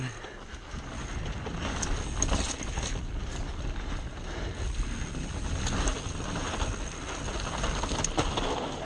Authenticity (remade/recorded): recorded